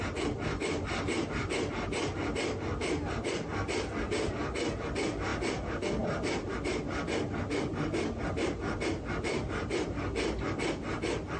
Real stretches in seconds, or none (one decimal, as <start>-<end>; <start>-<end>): 0.0-11.4